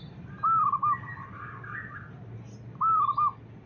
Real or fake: real